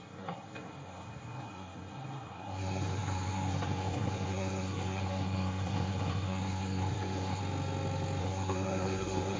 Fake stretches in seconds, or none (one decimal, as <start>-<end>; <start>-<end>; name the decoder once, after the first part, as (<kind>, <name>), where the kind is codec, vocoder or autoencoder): 0.0-7.4 (codec, SNAC); 8.2-9.4